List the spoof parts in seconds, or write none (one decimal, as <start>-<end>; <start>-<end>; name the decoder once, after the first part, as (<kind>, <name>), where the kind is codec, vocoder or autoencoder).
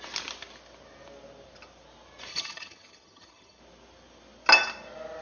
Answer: 2.3-3.6 (vocoder, HiFi-GAN)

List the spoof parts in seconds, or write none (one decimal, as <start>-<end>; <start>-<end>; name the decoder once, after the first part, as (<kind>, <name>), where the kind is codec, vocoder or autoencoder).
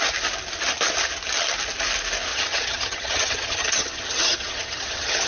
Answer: 2.3-5.3 (vocoder, HiFi-GAN)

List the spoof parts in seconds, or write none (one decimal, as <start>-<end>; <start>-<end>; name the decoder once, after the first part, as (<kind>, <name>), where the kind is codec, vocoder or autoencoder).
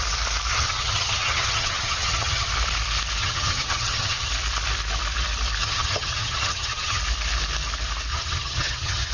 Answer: 0.5-2.5 (vocoder, HiFi-GAN); 3.2-4.3; 5.6-7.0; 8.1-9.1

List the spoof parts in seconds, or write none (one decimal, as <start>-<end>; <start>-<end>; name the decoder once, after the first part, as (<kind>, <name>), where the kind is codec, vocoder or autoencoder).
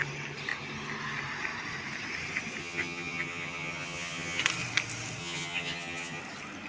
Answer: 2.6-4.4 (vocoder, HiFi-GAN); 5.2-6.2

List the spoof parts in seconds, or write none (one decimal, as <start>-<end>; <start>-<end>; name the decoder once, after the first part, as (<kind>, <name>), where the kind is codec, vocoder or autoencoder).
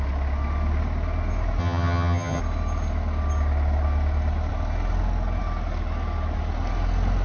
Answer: 1.6-2.4 (vocoder, HiFi-GAN)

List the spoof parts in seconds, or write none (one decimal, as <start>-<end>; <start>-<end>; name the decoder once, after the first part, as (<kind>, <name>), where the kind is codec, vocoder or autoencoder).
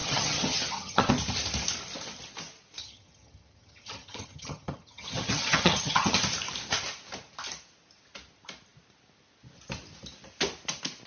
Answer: 0.0-1.1 (vocoder, HiFi-GAN); 2.8-6.1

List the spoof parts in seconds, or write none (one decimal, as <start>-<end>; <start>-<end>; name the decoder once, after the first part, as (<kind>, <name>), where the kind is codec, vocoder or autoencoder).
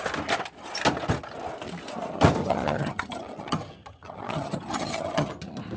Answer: 2.4-5.3 (vocoder, HiFi-GAN)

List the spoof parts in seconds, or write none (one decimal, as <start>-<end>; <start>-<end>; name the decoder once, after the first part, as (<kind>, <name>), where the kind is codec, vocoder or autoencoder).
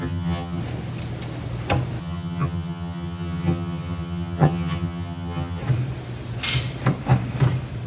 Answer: 0.0-0.6 (vocoder, HiFi-GAN); 2.0-5.6